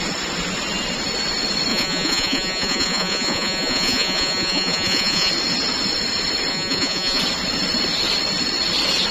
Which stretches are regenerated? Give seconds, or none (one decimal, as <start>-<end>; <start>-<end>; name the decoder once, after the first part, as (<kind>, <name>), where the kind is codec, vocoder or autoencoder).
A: 1.7-5.3 (vocoder, Vocos); 6.5-7.2